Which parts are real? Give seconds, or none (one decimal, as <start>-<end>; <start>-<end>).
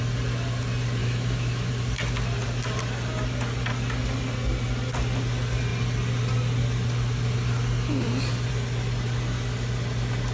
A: 0.0-1.0; 1.7-10.3